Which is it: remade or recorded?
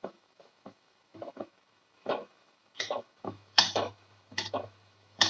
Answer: remade